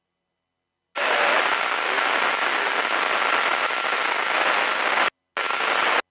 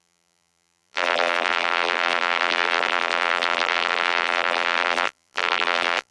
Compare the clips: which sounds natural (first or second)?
first